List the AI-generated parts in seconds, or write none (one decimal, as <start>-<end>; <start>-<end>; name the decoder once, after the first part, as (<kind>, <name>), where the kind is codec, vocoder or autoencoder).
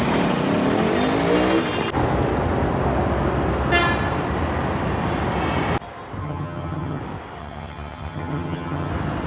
6.2-7.0 (vocoder, HiFi-GAN); 7.4-8.9